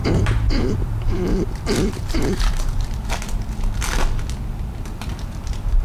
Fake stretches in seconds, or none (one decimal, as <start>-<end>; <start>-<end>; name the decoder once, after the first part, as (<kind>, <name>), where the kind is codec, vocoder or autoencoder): 0.0-3.1 (vocoder, BigVGAN v2)